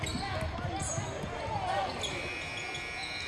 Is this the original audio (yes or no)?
yes